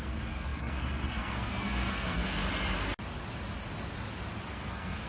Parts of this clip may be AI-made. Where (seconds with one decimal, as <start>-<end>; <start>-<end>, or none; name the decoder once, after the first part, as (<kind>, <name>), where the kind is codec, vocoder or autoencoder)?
0.0-2.4 (codec, SNAC); 4.5-5.1